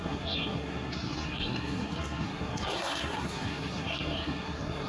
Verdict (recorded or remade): remade